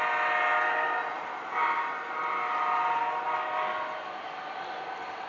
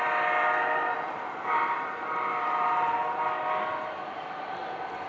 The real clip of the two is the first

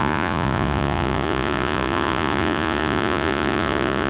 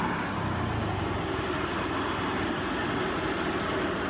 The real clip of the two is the second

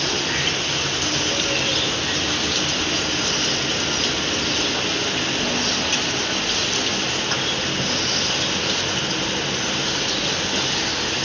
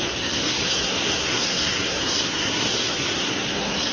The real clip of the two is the first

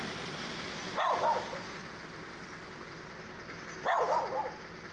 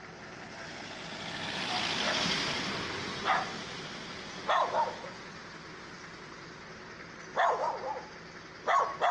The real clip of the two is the first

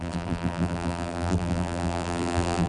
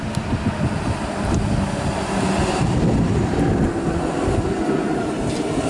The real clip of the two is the second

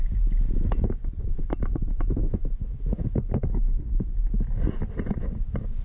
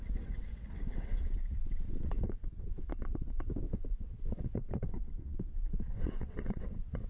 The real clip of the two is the first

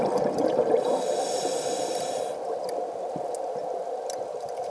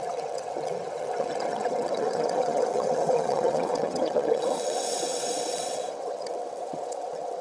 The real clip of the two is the first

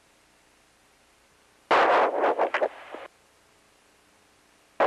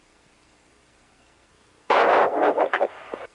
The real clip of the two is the first